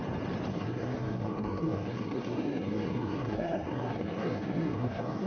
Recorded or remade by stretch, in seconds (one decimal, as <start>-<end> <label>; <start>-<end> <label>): 0.0-0.5 recorded; 0.5-5.3 remade